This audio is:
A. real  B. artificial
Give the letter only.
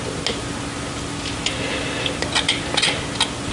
A